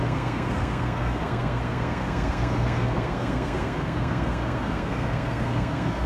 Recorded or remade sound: remade